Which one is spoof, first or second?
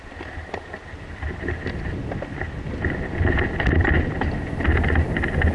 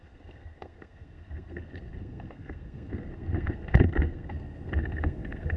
second